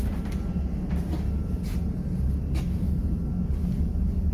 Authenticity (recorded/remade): recorded